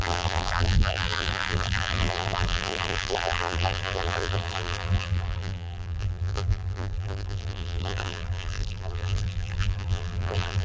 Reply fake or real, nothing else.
fake